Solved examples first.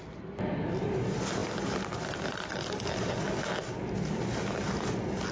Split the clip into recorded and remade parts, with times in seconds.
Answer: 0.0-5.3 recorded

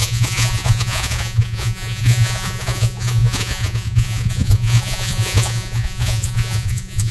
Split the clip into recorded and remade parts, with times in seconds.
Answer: 0.0-7.1 remade

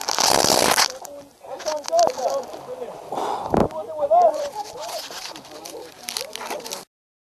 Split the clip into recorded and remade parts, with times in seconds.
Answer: 0.0-2.0 remade; 2.0-3.6 recorded; 3.6-5.9 remade; 5.9-7.2 recorded

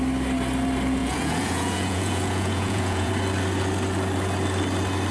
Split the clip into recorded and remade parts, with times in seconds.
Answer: 0.0-1.0 recorded; 1.0-3.1 remade; 3.1-5.1 recorded

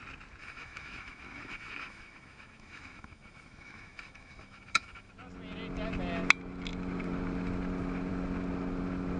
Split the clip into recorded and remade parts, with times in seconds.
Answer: 0.0-0.4 recorded; 0.4-5.1 remade; 5.1-9.2 recorded

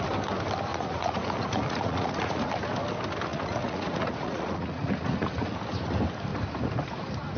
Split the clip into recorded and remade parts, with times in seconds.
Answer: 0.0-0.7 recorded; 0.7-2.5 remade; 2.5-3.3 recorded; 3.3-5.5 remade; 5.5-7.4 recorded

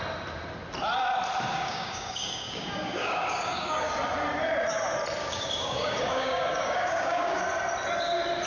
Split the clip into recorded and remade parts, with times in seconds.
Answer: 0.0-1.5 recorded; 1.5-3.9 remade; 3.9-5.2 recorded; 5.2-7.4 remade; 7.4-8.5 recorded